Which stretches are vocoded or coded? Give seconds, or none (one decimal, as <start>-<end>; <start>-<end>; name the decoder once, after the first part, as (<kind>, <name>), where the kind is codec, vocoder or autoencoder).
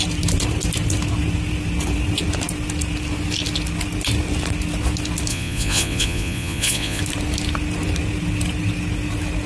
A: 5.3-7.0 (vocoder, Vocos)